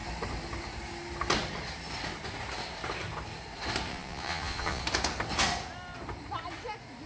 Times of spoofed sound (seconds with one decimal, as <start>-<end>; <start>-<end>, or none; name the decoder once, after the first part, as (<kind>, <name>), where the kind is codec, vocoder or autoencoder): 3.9-4.8 (vocoder, Vocos)